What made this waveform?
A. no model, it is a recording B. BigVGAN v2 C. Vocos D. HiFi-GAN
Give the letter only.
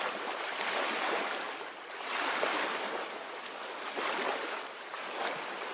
A